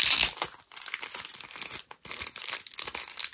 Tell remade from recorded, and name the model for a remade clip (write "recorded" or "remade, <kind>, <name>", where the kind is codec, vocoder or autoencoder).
recorded